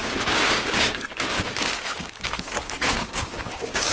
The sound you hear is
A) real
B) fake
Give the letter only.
B